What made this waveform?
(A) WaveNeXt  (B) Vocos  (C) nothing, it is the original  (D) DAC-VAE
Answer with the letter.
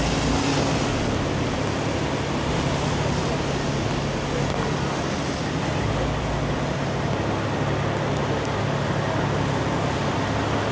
C